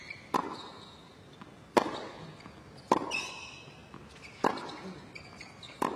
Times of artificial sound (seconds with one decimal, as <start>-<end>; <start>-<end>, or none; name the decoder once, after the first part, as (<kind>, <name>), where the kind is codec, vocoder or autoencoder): none